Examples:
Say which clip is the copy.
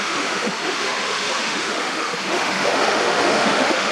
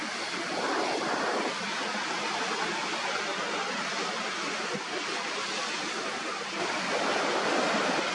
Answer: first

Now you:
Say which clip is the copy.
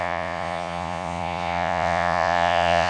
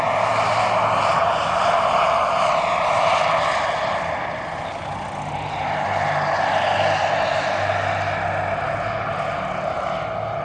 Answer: first